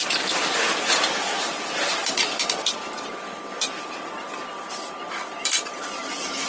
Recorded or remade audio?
remade